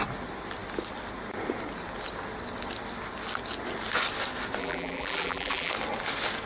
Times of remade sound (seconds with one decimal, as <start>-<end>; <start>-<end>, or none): 4.6-5.7